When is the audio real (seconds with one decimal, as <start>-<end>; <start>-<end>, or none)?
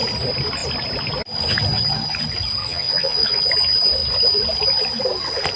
0.0-2.6; 3.4-5.6